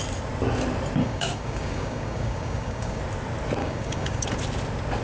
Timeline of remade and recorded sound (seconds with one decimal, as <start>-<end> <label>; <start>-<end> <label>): 0.0-1.0 recorded; 1.0-3.0 remade; 3.0-3.6 recorded; 3.6-4.2 remade; 4.2-5.0 recorded